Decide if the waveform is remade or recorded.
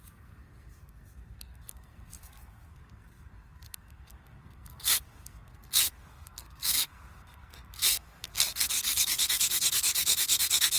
remade